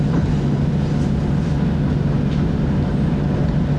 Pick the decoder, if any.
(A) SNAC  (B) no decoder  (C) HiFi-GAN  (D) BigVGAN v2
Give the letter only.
B